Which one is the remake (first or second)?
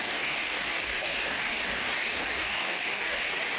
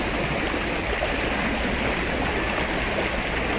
first